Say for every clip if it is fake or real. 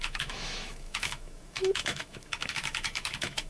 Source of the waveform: fake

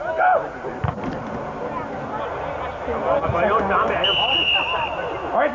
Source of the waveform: real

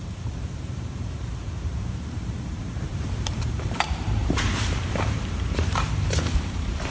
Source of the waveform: fake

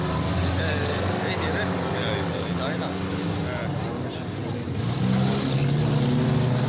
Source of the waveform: real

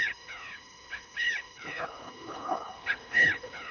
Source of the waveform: fake